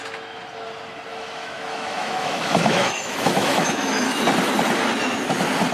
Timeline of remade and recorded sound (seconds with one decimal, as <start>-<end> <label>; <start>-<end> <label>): 0.0-1.1 recorded; 1.1-4.2 remade; 4.2-5.7 recorded